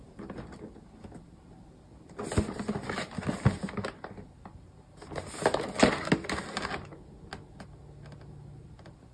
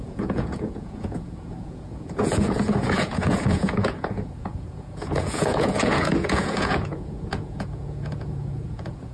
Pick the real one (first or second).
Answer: first